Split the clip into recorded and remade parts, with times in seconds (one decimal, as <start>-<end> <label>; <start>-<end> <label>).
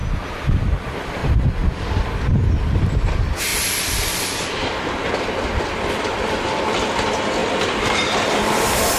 0.0-0.6 recorded; 0.6-1.2 remade; 1.2-2.8 recorded; 2.8-3.5 remade; 3.5-4.1 recorded; 4.1-9.0 remade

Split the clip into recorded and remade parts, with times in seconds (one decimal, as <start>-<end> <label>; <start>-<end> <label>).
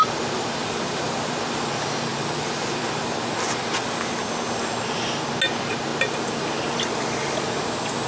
0.0-0.6 recorded; 0.6-1.7 remade; 1.7-2.1 recorded; 2.1-3.6 remade; 3.6-8.1 recorded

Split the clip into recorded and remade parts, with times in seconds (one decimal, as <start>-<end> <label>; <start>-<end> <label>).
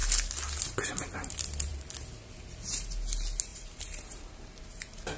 0.0-3.5 recorded; 3.5-4.6 remade; 4.6-5.2 recorded